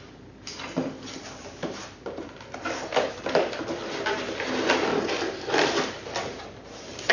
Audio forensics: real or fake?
real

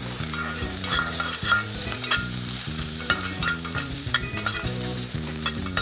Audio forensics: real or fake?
fake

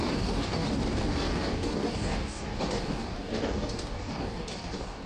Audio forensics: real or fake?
fake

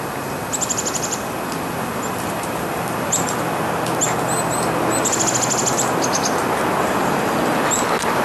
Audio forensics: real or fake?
real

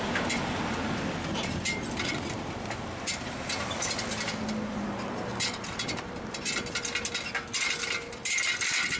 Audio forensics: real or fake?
real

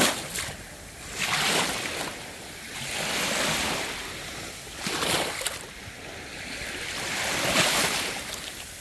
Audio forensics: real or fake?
real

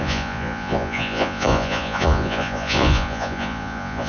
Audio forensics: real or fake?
fake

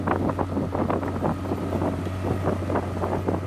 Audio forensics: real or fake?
real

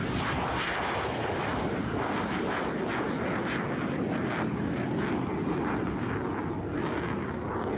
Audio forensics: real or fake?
real